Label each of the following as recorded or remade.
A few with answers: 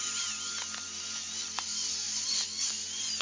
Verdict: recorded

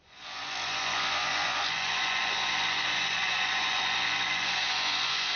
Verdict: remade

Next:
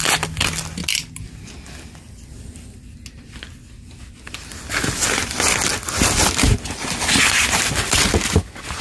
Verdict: recorded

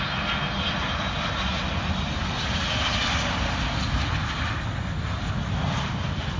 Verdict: recorded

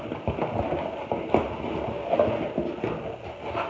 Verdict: recorded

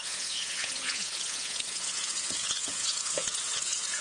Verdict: remade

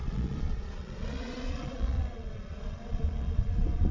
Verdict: remade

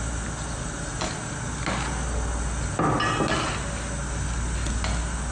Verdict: recorded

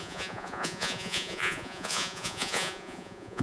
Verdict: remade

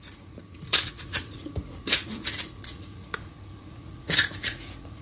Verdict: remade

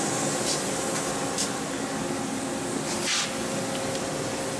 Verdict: recorded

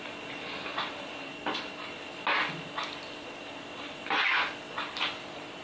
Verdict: recorded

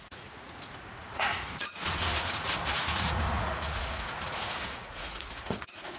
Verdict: remade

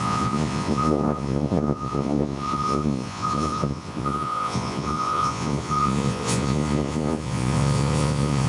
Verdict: remade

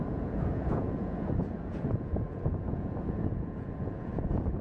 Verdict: remade